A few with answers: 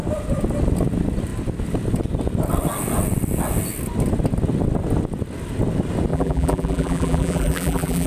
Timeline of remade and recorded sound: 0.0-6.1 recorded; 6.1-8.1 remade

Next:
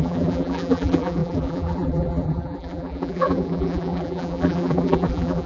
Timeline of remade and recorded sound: 0.0-5.5 remade